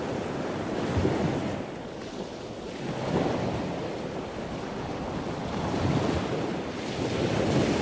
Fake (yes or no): no